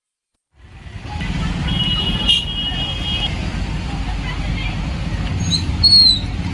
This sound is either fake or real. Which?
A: real